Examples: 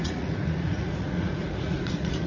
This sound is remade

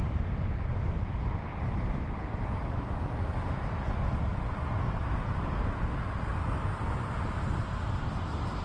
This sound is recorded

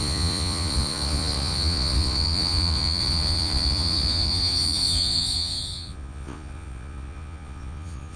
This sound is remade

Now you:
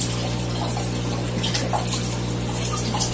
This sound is recorded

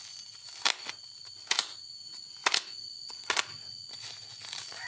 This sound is recorded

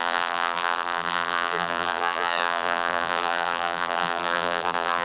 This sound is remade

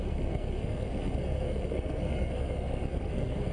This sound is remade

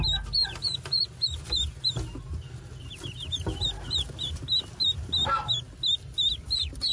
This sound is recorded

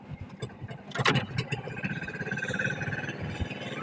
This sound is recorded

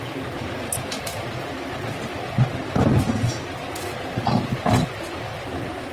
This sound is recorded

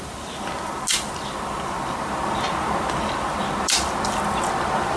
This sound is recorded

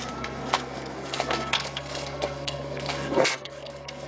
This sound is remade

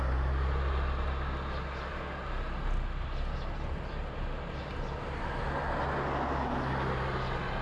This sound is recorded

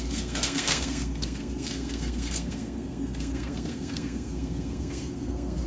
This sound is remade